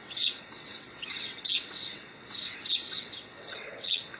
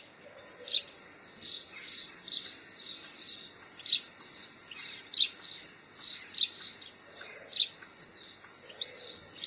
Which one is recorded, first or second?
second